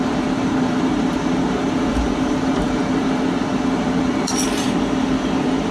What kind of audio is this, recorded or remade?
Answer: remade